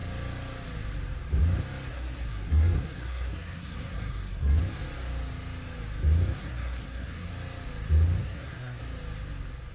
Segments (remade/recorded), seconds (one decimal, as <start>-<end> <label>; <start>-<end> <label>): 0.0-1.9 recorded; 1.9-4.6 remade; 4.6-6.4 recorded; 6.4-7.3 remade; 7.3-8.2 recorded; 8.2-8.8 remade; 8.8-9.7 recorded